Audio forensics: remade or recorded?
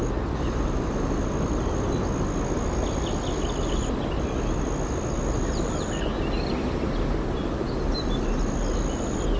recorded